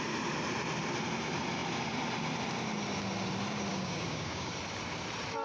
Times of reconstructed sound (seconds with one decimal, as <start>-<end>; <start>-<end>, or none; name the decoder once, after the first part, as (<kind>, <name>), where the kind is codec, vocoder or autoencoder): 3.7-4.5 (codec, DAC)